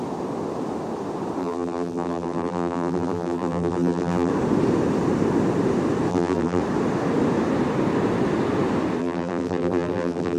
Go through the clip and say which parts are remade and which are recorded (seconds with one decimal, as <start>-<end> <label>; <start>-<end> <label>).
0.0-1.4 recorded; 1.4-4.3 remade; 4.3-6.1 recorded; 6.1-6.6 remade; 6.6-9.0 recorded; 9.0-10.4 remade

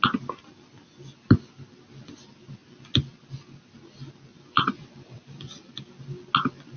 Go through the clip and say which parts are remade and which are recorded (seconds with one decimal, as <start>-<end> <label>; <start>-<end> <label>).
0.0-4.3 recorded; 4.3-5.8 remade; 5.8-6.8 recorded

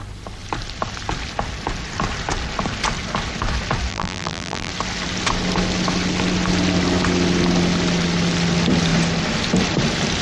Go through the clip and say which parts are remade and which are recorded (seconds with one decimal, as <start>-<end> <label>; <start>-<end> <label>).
0.0-3.9 recorded; 3.9-4.7 remade; 4.7-10.2 recorded

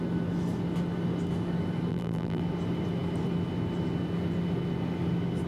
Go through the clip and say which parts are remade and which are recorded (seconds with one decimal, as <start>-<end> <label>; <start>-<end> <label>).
0.0-1.9 recorded; 1.9-2.4 remade; 2.4-5.5 recorded

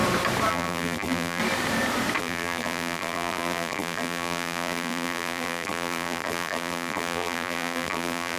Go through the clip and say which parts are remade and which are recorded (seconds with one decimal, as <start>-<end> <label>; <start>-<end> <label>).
0.0-0.5 recorded; 0.5-1.4 remade; 1.4-2.2 recorded; 2.2-8.4 remade